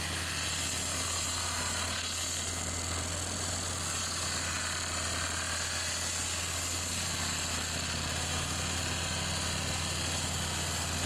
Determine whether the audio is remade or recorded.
recorded